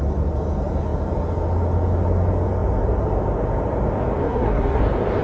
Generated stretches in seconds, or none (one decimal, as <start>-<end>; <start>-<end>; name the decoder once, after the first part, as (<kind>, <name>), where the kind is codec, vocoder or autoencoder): 4.2-4.8 (codec, SNAC)